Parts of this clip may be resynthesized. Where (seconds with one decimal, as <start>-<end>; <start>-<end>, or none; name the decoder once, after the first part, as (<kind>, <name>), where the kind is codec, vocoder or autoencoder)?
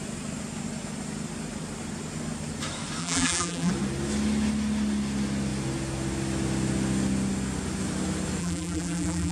3.0-3.7 (vocoder, BigVGAN v2); 8.4-9.3